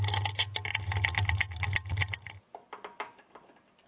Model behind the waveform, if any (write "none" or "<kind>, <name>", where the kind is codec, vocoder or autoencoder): none